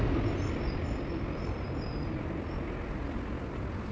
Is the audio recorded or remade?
recorded